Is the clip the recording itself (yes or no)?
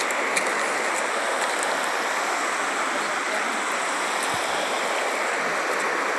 yes